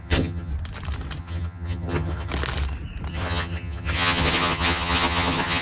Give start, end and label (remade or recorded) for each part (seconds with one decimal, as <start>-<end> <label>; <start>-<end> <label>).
0.0-0.5 remade; 0.5-1.2 recorded; 1.2-2.3 remade; 2.3-3.1 recorded; 3.1-5.6 remade

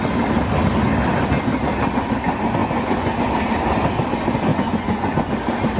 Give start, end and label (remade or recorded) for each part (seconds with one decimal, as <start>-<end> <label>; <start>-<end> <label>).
0.0-2.6 recorded; 2.6-3.2 remade; 3.2-4.5 recorded; 4.5-5.3 remade; 5.3-5.8 recorded

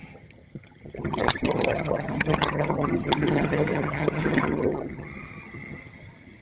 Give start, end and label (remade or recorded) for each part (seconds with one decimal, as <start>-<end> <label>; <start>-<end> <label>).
0.0-6.4 remade